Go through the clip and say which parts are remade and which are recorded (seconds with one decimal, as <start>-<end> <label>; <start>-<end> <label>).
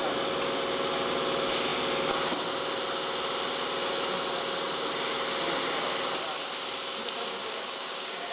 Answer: 0.0-7.4 recorded; 7.4-8.3 remade